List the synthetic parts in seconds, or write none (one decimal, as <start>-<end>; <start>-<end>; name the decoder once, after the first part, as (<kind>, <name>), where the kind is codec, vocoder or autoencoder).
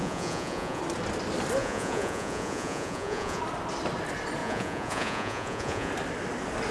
0.0-0.8 (vocoder, Vocos); 1.6-3.4; 4.4-5.9